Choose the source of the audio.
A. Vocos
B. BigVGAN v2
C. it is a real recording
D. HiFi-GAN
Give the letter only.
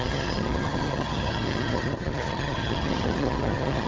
D